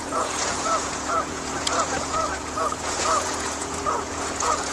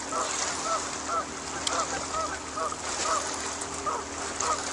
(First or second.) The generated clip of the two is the first